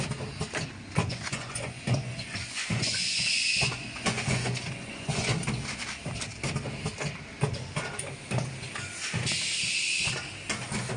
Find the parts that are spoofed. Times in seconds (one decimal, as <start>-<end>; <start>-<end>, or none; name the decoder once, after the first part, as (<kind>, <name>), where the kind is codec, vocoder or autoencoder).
1.0-5.3 (vocoder, Vocos)